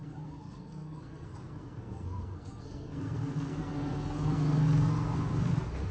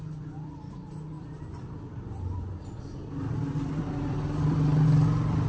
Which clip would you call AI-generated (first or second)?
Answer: first